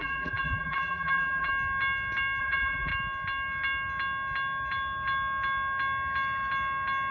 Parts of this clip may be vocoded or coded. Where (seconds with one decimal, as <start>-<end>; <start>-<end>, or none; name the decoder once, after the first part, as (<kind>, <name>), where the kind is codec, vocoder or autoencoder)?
0.0-1.5 (vocoder, BigVGAN v2); 2.4-2.9